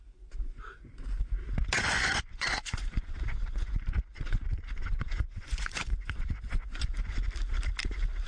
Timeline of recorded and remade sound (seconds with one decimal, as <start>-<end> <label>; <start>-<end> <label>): 0.0-1.8 recorded; 1.8-6.8 remade; 6.8-8.3 recorded